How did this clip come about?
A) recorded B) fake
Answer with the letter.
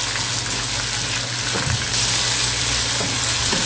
A